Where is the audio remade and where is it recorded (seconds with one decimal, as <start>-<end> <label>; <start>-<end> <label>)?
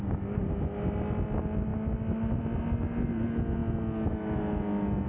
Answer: 0.0-5.1 recorded